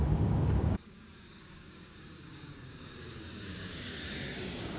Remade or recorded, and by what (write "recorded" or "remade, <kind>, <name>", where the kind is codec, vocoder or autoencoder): remade, codec, DAC